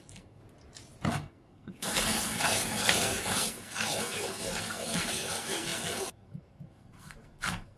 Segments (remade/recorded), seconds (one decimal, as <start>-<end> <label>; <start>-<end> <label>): 0.0-0.4 remade; 0.4-1.1 recorded; 1.1-7.8 remade